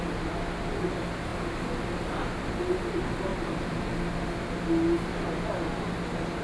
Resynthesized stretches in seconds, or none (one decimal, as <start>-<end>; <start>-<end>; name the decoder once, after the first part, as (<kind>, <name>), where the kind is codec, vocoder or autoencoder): 3.3-3.9 (vocoder, BigVGAN v2)